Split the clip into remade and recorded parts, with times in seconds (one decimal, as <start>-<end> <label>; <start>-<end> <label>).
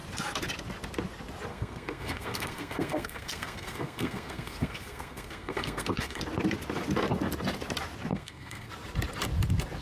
0.0-1.5 recorded; 1.5-6.2 remade; 6.2-8.1 recorded; 8.1-8.7 remade; 8.7-9.8 recorded